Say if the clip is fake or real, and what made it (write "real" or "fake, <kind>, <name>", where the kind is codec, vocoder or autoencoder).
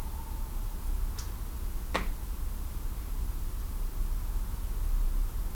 real